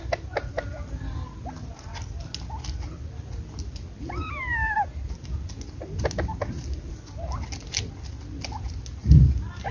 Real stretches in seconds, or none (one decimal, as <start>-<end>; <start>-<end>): 0.0-9.7